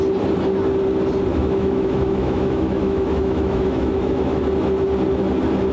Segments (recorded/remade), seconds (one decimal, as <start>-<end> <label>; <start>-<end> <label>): 0.0-1.3 recorded; 1.3-4.4 remade; 4.4-5.7 recorded